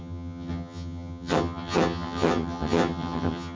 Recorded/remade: remade